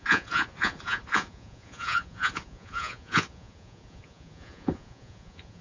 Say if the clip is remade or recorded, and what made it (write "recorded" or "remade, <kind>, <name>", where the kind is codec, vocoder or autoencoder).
remade, vocoder, Vocos